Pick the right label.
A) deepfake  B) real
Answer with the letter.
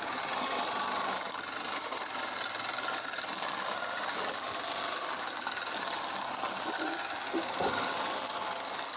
B